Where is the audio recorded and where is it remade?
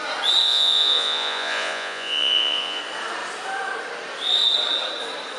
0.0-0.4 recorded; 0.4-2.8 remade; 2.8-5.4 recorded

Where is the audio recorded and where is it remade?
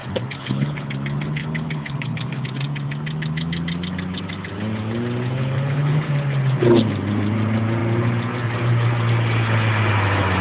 0.0-0.9 remade; 0.9-1.4 recorded; 1.4-2.4 remade; 2.4-5.4 recorded; 5.4-6.1 remade; 6.1-10.4 recorded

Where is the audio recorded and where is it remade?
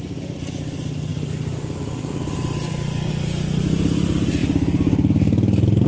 0.0-1.1 recorded; 1.1-3.1 remade; 3.1-5.9 recorded